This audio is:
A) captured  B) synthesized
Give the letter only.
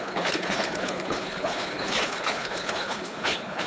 B